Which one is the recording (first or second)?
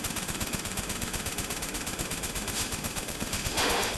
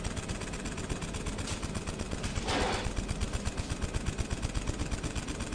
second